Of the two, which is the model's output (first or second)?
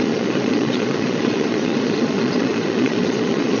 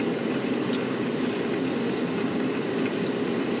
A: first